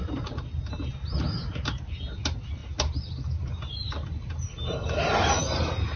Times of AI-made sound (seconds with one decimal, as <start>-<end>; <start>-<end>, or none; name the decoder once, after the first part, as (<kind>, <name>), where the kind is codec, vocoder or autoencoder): none